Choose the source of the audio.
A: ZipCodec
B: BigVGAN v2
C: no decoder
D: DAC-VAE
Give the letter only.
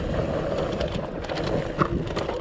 C